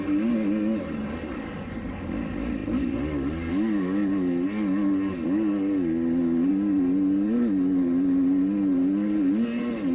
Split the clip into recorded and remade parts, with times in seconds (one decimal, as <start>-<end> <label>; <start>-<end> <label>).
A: 0.0-9.9 recorded